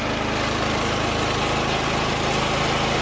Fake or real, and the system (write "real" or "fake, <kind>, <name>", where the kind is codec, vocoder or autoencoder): real